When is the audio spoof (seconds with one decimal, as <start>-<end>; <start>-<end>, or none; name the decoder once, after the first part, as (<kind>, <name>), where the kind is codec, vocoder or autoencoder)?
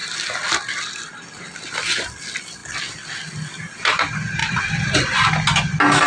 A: 0.0-1.4 (vocoder, BigVGAN v2); 2.6-3.3; 4.4-5.3